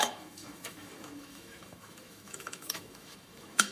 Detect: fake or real fake